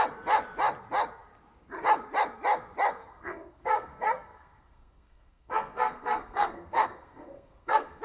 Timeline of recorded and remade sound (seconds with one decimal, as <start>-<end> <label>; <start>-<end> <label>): 0.0-3.0 recorded; 3.0-8.0 remade